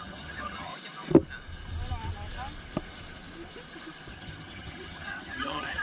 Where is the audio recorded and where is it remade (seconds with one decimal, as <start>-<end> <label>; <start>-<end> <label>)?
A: 0.0-0.7 remade; 0.7-4.1 recorded; 4.1-5.8 remade

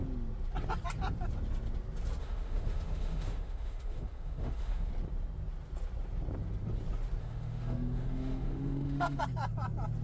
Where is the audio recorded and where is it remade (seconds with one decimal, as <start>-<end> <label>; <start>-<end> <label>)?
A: 0.0-2.2 recorded; 2.2-4.9 remade; 4.9-7.2 recorded; 7.2-9.2 remade; 9.2-10.0 recorded